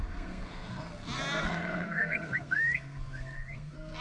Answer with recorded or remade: remade